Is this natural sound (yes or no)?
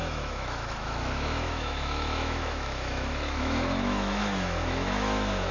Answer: no